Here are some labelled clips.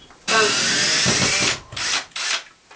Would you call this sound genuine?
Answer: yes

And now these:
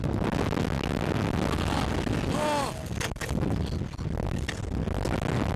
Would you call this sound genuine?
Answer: yes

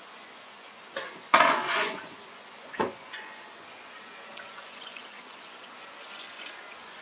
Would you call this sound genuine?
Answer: no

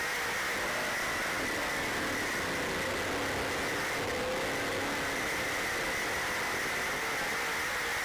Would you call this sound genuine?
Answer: yes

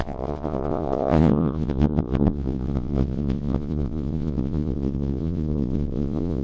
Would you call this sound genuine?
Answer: no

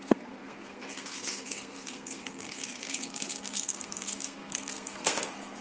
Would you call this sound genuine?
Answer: no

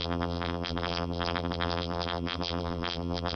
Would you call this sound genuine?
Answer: no